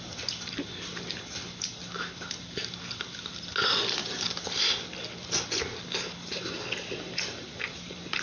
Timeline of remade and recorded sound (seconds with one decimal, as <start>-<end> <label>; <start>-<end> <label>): 0.0-8.2 recorded